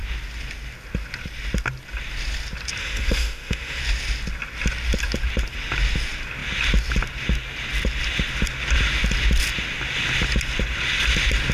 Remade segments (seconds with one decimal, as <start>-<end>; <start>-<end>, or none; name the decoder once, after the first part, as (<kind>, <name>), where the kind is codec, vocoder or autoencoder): 2.8-3.8 (autoencoder, DAC-VAE)